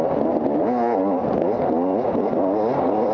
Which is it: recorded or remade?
recorded